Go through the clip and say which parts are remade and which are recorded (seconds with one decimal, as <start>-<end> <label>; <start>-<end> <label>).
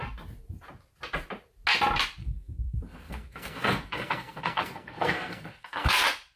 0.0-2.2 recorded; 2.2-6.0 remade; 6.0-6.4 recorded